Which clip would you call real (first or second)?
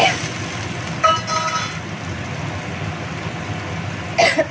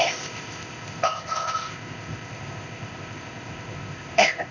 first